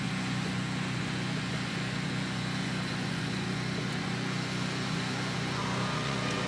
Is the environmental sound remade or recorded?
remade